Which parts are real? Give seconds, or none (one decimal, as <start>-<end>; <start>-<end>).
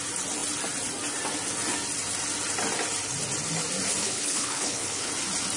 0.0-4.0; 5.1-5.6